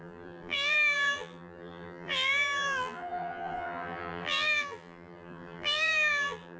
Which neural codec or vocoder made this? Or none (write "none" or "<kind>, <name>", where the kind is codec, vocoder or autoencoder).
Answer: vocoder, BigVGAN v2